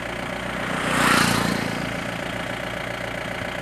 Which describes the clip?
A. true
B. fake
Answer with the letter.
A